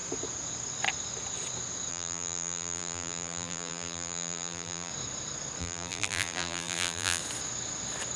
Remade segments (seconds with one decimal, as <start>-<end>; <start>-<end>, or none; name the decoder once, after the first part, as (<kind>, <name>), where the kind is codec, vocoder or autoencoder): 1.9-4.9 (vocoder, BigVGAN v2); 5.6-7.2